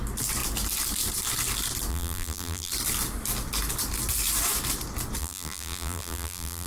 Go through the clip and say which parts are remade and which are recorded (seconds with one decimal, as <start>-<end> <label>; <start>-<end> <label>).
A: 0.0-1.9 recorded; 1.9-2.7 remade; 2.7-5.2 recorded; 5.2-6.7 remade